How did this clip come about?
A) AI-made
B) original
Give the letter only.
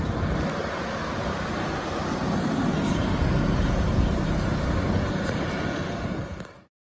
B